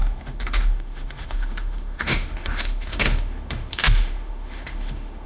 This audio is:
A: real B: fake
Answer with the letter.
B